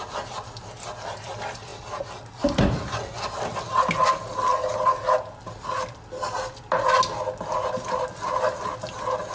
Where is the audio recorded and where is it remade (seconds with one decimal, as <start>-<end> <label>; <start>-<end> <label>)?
0.0-9.3 recorded